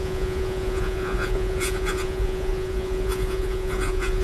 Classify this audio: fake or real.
fake